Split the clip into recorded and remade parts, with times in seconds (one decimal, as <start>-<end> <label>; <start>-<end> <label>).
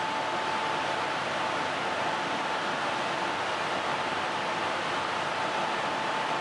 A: 0.0-6.4 recorded